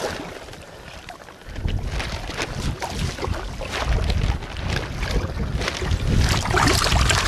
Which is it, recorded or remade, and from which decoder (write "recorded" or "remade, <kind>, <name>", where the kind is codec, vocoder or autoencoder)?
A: recorded